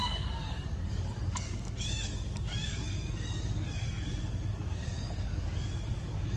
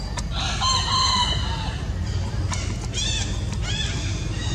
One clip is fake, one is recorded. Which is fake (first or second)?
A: first